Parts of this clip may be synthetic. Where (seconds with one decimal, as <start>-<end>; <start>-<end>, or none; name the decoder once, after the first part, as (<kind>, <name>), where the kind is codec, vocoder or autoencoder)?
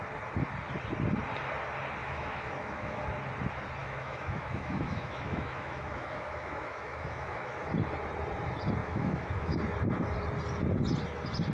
2.0-3.0 (autoencoder, DAC-VAE); 3.8-7.7; 8.8-9.6